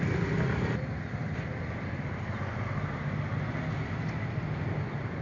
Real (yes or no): yes